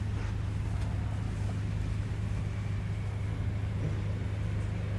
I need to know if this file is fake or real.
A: real